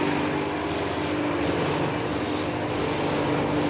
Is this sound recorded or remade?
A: recorded